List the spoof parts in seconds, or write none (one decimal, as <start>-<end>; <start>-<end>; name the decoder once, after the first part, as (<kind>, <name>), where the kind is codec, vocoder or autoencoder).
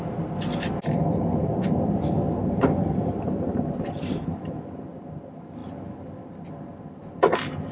none